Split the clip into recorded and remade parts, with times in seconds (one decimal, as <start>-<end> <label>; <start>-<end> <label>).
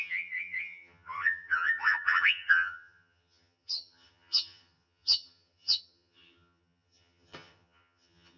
0.0-8.4 remade